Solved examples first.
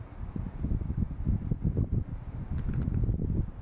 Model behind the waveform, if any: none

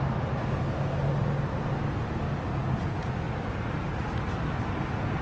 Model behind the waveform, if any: none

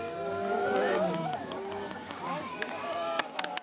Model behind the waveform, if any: codec, DAC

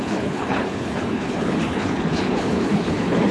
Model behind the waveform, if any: codec, HILCodec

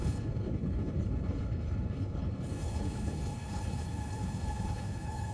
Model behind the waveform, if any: codec, HILCodec